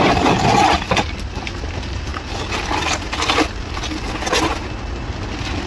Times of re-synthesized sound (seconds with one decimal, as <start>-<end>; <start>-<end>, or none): none